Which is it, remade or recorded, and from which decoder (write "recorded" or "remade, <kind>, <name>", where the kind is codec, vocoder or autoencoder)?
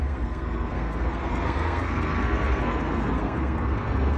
remade, codec, SNAC